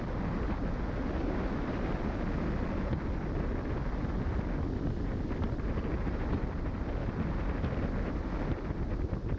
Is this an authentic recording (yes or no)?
yes